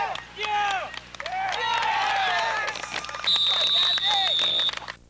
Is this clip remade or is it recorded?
recorded